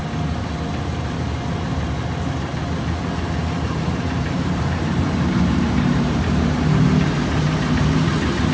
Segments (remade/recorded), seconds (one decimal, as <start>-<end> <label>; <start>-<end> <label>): 0.0-3.4 recorded; 3.4-8.1 remade; 8.1-8.5 recorded